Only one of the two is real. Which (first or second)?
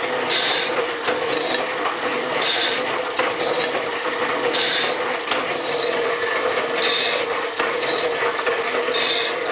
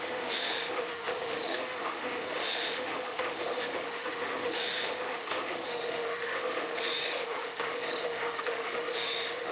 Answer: first